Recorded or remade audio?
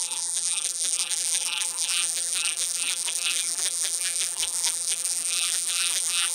remade